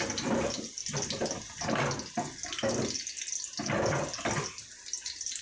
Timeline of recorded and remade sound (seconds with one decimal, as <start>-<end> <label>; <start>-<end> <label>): 0.0-5.4 recorded